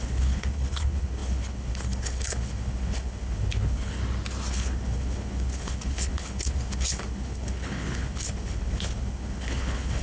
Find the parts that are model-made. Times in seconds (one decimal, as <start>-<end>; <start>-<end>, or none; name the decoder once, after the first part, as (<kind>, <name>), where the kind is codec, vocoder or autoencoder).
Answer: 0.0-4.0 (codec, HILCodec); 4.5-10.0